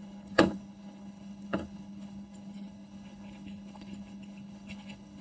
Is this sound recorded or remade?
remade